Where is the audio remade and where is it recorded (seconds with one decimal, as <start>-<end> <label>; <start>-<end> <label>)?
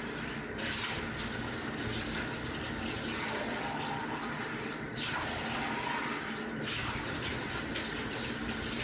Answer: 0.0-6.8 recorded; 6.8-7.7 remade; 7.7-8.8 recorded